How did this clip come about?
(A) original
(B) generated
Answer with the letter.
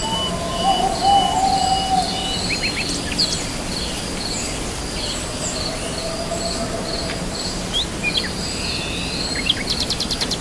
A